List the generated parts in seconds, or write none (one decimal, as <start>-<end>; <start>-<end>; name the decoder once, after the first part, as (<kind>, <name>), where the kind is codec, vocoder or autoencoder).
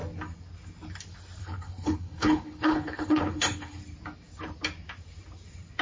1.4-3.8 (codec, HILCodec)